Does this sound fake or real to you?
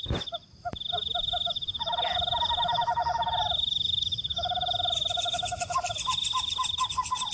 real